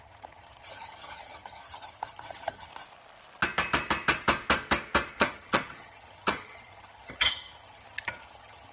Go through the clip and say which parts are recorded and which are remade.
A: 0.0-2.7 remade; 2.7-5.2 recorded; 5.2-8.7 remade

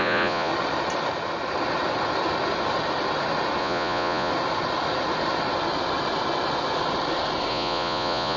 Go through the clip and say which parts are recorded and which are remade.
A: 0.0-0.5 remade; 0.5-3.6 recorded; 3.6-4.3 remade; 4.3-7.5 recorded; 7.5-8.4 remade